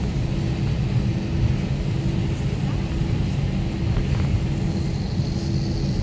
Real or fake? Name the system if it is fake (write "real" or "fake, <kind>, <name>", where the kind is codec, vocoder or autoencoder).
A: real